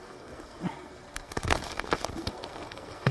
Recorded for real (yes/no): no